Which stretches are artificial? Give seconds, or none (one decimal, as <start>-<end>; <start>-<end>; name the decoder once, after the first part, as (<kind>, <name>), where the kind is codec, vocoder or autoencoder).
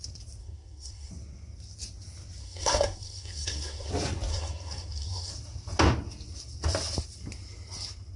0.4-1.1 (codec, SNAC); 2.4-3.9; 4.3-5.3